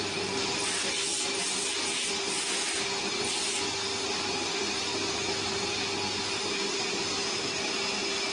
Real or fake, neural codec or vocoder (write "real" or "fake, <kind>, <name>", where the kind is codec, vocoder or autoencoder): real